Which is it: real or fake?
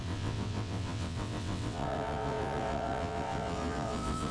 fake